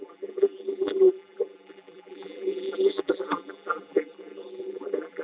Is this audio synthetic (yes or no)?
yes